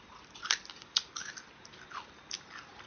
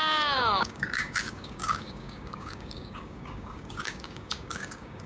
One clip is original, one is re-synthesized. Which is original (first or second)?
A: first